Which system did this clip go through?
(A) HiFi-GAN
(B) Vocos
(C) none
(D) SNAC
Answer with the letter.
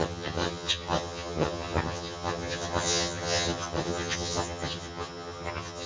A